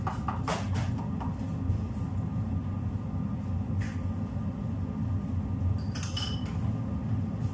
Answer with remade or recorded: recorded